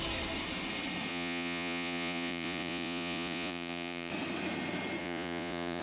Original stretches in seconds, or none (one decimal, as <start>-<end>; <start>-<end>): 0.0-1.1; 4.1-5.0